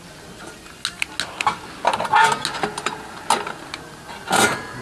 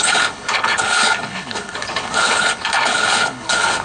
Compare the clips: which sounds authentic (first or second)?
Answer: first